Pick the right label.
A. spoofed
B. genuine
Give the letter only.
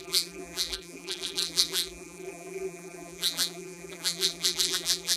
A